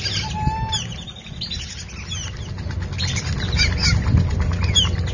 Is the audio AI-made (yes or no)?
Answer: no